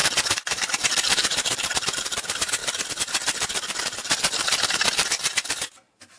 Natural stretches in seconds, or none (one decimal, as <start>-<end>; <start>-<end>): 2.6-3.8